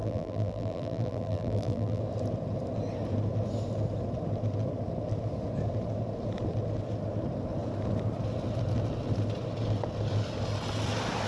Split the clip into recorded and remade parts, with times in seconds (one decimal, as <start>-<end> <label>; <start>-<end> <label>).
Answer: 0.0-2.0 remade; 2.0-11.3 recorded